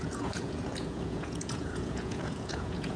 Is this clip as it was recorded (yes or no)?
no